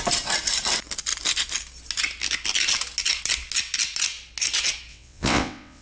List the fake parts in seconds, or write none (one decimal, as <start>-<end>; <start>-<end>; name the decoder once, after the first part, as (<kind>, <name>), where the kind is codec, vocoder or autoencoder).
4.9-5.8 (vocoder, WaveNeXt)